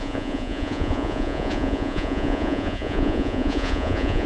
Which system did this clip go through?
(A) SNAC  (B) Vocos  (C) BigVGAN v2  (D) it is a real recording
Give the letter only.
B